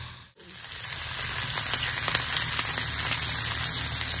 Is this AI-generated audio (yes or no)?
no